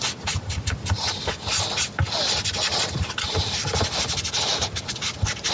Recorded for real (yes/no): yes